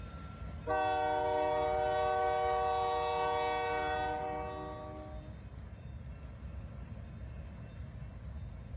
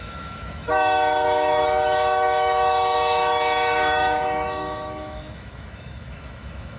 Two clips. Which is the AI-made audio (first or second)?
second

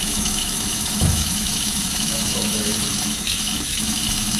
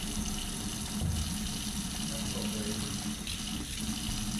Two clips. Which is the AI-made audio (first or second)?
first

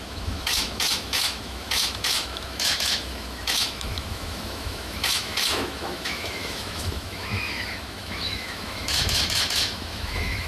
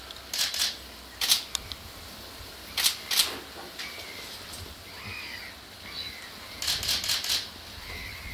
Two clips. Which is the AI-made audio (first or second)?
first